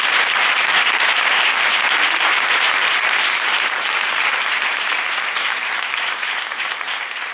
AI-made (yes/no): yes